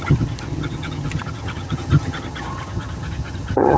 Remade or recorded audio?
remade